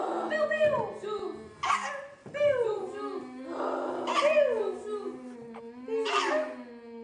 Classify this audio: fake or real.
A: real